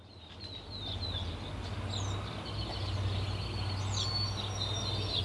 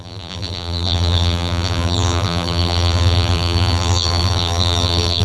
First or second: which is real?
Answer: first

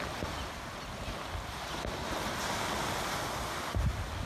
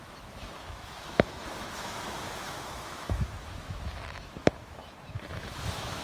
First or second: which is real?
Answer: first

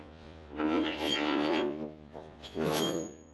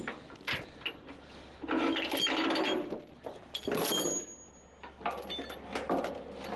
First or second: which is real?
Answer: second